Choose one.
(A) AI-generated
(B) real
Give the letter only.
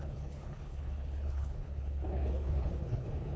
A